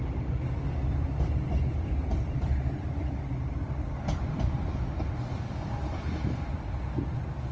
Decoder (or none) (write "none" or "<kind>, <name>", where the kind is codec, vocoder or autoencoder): none